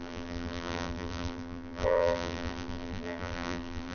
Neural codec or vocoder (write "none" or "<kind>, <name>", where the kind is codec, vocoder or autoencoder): vocoder, BigVGAN v2